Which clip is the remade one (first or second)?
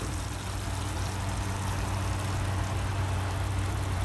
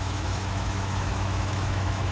second